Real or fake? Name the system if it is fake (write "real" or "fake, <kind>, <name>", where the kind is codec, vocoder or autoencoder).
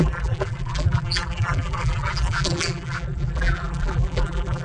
fake, vocoder, BigVGAN v2